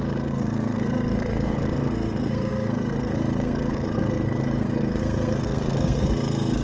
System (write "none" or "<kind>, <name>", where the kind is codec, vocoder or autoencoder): codec, SNAC